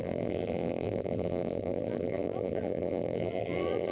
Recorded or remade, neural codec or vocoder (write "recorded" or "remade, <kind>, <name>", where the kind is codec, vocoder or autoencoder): remade, vocoder, BigVGAN v2